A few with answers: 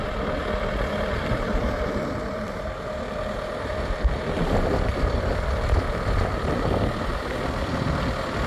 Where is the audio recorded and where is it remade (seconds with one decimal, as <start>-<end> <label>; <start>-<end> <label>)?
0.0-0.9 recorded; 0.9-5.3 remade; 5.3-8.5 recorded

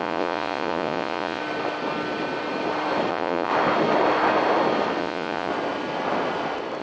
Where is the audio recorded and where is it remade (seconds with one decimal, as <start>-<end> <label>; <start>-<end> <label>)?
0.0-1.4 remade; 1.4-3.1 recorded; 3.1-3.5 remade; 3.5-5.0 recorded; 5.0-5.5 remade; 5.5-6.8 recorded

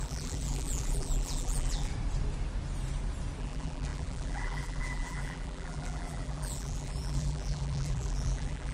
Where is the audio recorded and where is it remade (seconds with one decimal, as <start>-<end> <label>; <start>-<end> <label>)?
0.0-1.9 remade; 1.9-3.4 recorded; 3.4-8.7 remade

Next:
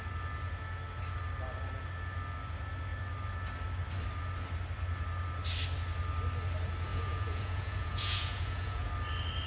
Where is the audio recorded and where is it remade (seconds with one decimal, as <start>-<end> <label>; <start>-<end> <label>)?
0.0-6.9 recorded; 6.9-8.9 remade; 8.9-9.5 recorded

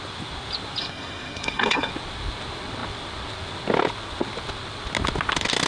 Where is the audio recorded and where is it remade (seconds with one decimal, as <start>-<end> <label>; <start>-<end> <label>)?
0.0-0.8 recorded; 0.8-1.9 remade; 1.9-5.7 recorded

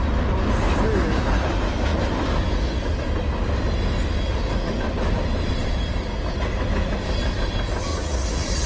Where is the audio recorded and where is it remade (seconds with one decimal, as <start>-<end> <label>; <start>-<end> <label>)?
0.0-7.9 recorded; 7.9-8.7 remade

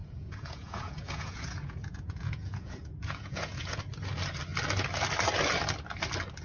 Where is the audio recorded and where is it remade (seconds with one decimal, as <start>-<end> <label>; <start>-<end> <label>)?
0.0-3.8 remade; 3.8-6.4 recorded

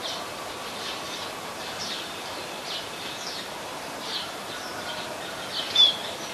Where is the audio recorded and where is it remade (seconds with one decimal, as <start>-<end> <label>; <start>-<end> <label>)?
0.0-1.4 recorded; 1.4-5.2 remade; 5.2-6.3 recorded